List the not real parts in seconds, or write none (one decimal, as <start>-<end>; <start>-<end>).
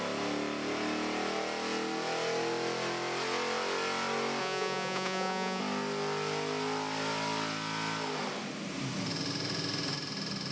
4.4-5.6